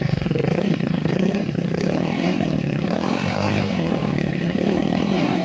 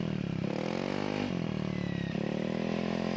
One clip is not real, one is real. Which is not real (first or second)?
first